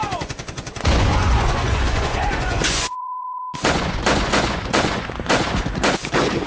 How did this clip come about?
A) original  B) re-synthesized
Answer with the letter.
B